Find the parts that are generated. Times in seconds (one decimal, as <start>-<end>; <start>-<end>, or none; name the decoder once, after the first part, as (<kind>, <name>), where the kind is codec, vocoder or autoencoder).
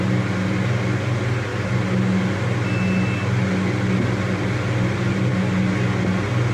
none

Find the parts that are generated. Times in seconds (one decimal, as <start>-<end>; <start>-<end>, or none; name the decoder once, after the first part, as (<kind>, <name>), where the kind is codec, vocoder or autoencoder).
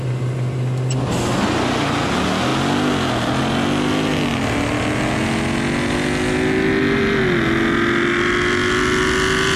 none